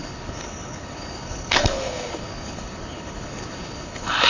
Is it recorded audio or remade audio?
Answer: remade